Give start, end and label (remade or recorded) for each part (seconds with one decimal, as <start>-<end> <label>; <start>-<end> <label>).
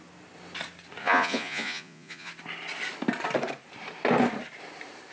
0.0-1.0 recorded; 1.0-2.3 remade; 2.3-5.1 recorded